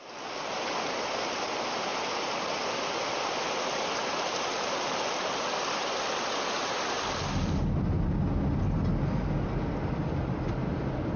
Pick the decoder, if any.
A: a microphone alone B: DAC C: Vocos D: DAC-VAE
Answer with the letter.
A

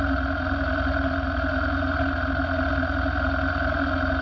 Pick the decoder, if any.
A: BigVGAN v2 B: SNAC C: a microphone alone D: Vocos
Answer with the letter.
C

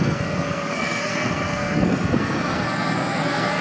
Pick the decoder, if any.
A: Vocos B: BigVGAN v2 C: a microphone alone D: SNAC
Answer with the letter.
D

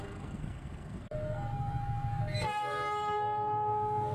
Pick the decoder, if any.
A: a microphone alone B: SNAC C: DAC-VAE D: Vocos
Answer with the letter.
B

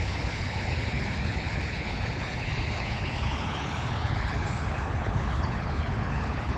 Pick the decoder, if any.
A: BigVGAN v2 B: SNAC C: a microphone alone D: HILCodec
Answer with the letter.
D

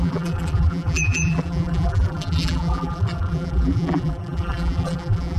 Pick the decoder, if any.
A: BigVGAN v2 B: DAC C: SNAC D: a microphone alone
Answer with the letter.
A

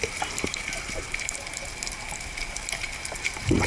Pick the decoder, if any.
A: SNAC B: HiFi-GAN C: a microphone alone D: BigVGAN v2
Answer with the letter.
D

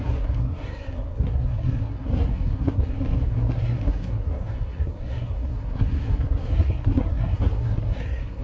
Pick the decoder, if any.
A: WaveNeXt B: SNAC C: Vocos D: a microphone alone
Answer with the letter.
B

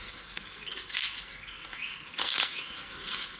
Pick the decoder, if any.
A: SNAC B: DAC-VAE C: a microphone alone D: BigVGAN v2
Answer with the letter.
A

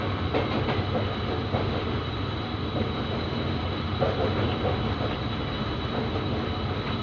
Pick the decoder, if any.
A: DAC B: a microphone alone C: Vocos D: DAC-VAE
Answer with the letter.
B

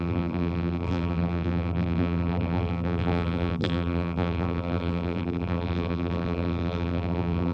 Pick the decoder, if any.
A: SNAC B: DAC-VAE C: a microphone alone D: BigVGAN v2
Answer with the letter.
D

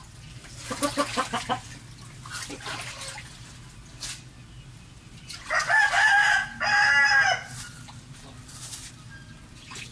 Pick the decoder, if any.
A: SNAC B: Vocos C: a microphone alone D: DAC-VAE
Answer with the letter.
C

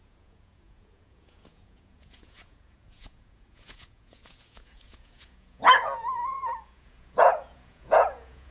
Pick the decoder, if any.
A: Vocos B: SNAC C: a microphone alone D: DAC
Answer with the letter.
A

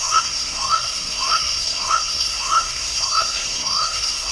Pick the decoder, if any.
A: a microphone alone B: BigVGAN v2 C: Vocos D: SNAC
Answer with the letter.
D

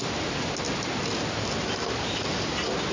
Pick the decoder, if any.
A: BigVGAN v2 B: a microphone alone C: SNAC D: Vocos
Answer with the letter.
B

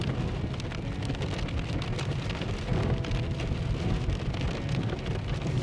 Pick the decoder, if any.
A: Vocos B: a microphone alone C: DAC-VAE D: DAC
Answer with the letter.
B